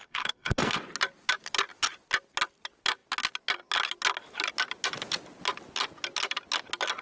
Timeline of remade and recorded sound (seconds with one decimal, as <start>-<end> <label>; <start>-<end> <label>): 0.0-0.8 remade; 0.8-7.0 recorded